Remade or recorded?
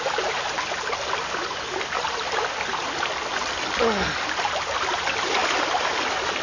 recorded